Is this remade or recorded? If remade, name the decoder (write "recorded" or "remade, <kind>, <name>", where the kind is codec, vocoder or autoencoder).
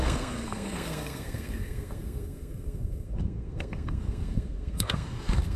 remade, codec, SNAC